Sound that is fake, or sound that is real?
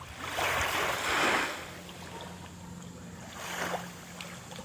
real